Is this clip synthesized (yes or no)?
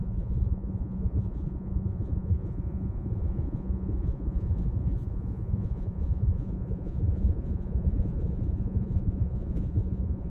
yes